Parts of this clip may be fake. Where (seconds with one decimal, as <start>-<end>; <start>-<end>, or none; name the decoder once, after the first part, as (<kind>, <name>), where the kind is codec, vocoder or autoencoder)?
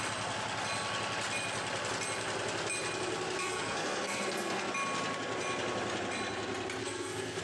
3.4-4.7 (codec, SNAC); 6.8-7.4